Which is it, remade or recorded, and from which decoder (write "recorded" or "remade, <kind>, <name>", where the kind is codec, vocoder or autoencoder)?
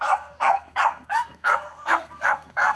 remade, codec, SNAC